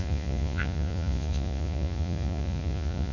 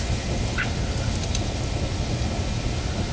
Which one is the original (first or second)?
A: second